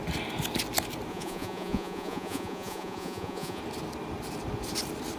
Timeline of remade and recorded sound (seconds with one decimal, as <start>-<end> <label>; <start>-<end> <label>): 0.0-1.1 recorded; 1.1-3.6 remade; 3.6-5.2 recorded

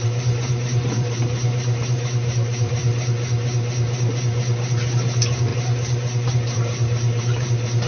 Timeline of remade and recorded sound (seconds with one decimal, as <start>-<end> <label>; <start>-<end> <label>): 0.0-2.8 remade; 2.8-4.9 recorded; 4.9-7.9 remade

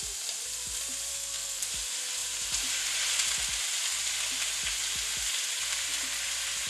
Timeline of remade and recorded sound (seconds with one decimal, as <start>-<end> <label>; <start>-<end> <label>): 0.0-1.1 recorded; 1.1-1.7 remade; 1.7-6.7 recorded

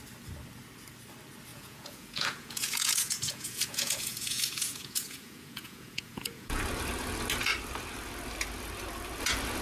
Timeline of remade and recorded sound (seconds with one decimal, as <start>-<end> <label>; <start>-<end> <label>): 0.0-1.5 recorded; 1.5-6.6 remade; 6.6-9.6 recorded

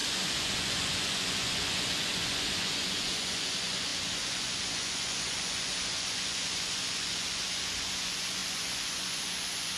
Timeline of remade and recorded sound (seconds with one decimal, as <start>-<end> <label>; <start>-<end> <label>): 0.0-9.8 remade

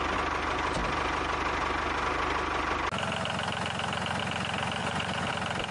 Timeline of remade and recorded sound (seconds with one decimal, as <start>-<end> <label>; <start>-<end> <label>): 0.0-4.8 recorded; 4.8-5.3 remade; 5.3-5.7 recorded

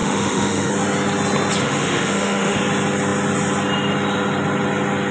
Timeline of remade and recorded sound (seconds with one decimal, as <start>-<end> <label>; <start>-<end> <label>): 0.0-0.7 remade; 0.7-1.6 recorded; 1.6-2.6 remade; 2.6-5.1 recorded